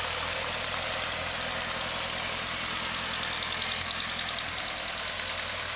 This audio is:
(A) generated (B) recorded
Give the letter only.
B